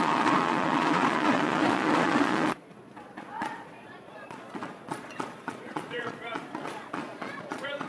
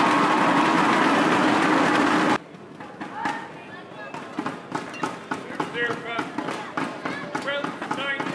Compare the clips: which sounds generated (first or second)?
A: first